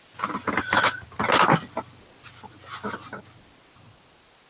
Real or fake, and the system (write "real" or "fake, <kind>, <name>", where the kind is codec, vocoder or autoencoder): real